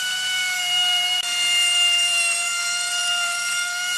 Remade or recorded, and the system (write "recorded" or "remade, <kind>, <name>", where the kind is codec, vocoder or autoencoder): remade, vocoder, BigVGAN v2